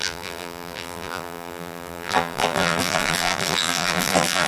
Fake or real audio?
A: fake